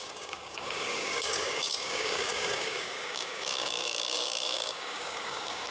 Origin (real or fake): fake